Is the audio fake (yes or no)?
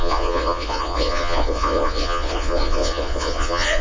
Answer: yes